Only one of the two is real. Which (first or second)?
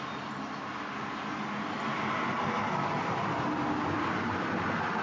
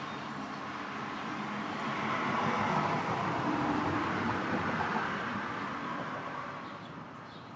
first